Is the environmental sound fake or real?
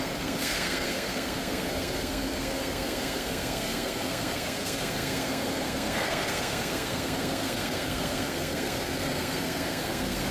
fake